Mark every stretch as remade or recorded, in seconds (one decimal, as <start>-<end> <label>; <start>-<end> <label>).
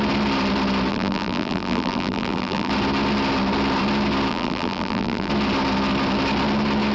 0.0-0.9 recorded; 0.9-2.7 remade; 2.7-4.3 recorded; 4.3-5.3 remade; 5.3-6.9 recorded